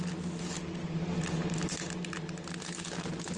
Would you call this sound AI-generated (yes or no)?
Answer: no